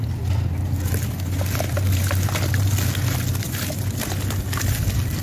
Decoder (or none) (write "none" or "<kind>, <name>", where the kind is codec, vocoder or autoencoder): none